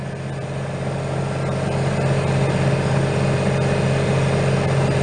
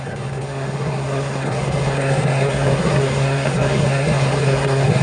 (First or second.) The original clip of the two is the first